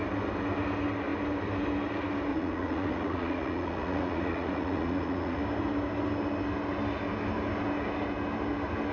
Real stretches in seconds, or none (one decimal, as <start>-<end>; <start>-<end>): 0.0-2.3; 5.4-8.9

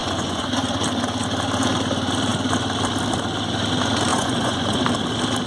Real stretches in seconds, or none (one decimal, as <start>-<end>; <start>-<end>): 0.5-4.1; 4.8-5.5

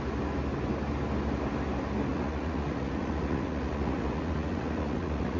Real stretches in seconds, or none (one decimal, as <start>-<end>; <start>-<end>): 0.0-2.1

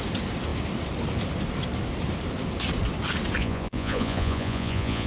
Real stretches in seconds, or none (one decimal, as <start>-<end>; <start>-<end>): 0.0-3.4

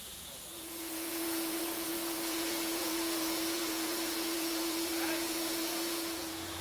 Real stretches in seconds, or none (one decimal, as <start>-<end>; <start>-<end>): none